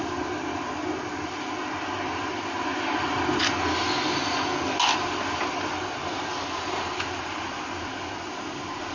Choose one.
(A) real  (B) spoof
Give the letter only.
A